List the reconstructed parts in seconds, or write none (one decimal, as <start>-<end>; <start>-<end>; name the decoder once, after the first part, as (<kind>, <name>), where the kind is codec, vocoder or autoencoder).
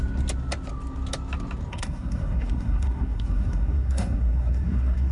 1.7-5.1 (codec, SNAC)